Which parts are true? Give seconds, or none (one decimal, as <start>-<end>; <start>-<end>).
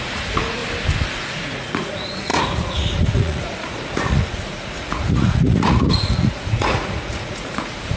0.6-1.2